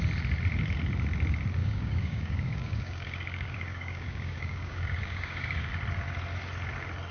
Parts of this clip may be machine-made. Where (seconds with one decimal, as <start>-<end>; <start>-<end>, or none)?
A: 1.6-5.7